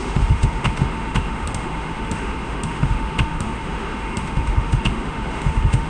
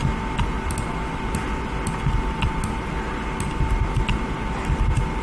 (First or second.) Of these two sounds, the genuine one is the second